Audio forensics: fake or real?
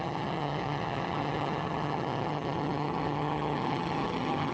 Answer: fake